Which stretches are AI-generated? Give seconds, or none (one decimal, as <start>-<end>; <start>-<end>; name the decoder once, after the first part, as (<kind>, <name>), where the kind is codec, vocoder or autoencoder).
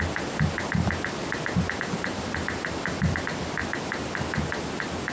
none